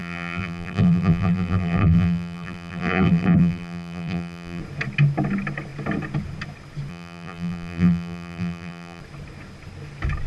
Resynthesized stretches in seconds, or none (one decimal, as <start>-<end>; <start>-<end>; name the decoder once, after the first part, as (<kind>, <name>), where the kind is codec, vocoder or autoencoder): 0.0-4.6 (vocoder, BigVGAN v2); 6.9-9.0